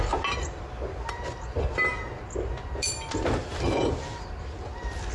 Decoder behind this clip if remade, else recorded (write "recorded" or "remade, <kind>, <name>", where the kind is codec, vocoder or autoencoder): recorded